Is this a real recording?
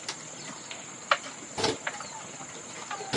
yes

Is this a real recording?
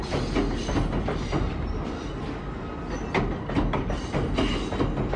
yes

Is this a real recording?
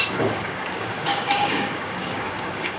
no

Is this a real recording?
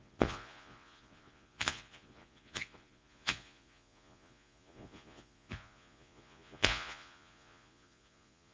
no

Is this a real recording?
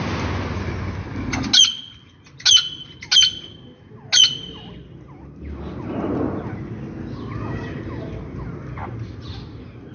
yes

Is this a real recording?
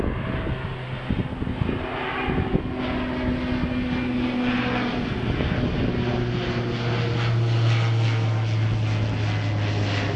yes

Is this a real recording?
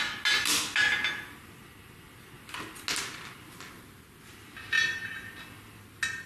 yes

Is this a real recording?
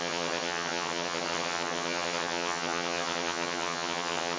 no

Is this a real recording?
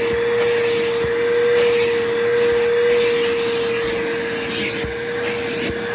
yes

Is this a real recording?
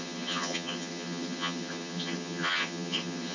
no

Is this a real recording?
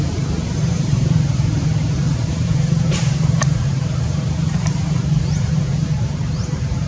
no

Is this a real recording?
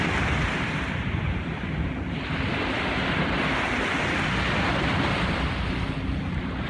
yes